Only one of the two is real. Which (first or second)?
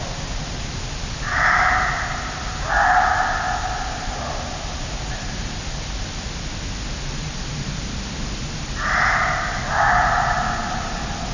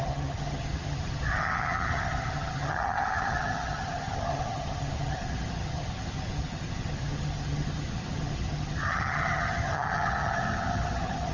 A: first